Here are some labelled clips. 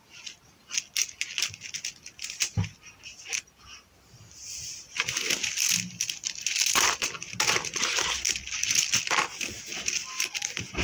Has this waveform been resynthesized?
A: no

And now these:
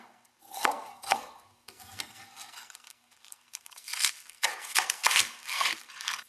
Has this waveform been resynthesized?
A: yes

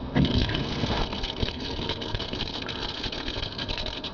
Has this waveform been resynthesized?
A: yes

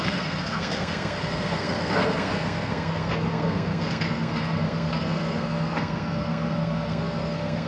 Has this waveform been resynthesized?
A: yes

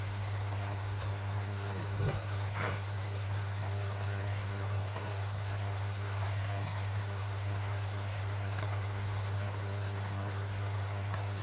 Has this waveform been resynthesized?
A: yes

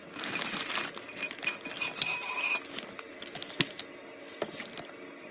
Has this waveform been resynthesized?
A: no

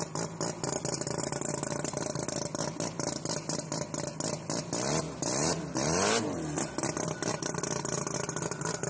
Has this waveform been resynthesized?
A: no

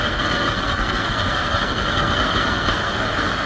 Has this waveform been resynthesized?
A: yes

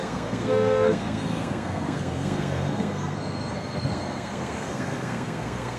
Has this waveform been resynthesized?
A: yes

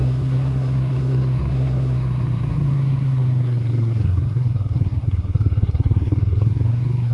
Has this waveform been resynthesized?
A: yes